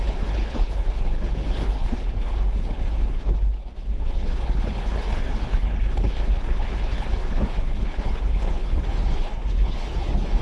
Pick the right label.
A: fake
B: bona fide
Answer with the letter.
A